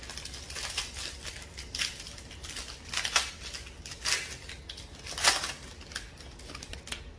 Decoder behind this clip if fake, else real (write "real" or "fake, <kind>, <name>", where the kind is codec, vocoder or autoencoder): real